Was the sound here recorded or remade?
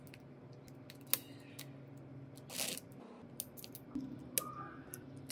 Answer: recorded